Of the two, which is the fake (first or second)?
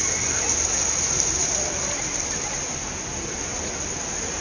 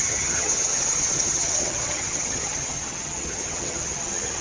second